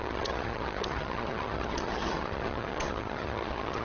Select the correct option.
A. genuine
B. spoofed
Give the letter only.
B